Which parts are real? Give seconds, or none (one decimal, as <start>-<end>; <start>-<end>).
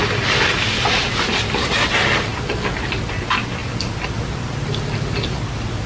0.0-5.9